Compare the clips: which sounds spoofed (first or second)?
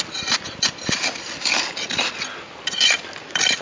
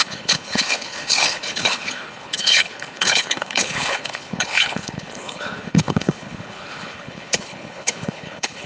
second